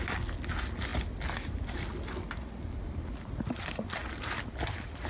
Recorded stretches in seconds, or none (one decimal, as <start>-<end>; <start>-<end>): 0.0-5.1